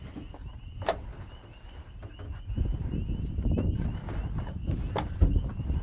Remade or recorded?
recorded